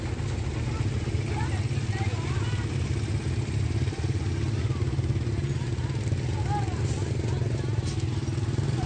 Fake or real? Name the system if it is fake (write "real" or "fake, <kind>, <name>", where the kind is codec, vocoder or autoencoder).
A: real